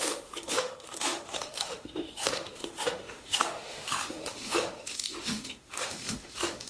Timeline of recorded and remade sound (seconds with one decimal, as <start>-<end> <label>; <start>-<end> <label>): 0.0-6.7 remade